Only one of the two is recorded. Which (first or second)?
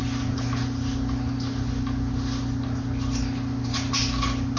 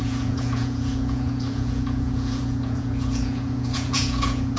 first